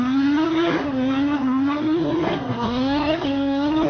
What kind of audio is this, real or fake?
fake